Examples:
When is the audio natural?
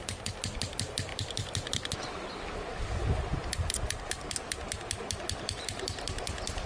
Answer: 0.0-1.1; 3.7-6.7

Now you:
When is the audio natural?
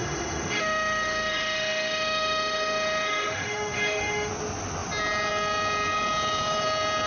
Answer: 4.3-7.1